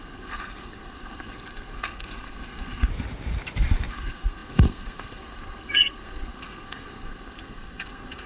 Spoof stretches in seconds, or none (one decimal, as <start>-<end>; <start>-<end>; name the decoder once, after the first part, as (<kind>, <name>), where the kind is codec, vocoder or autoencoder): 0.0-2.9 (codec, SNAC); 3.9-8.3